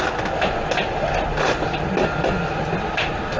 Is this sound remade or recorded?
recorded